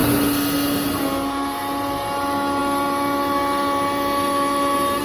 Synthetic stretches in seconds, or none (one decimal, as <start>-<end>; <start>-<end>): none